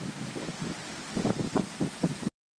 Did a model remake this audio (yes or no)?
no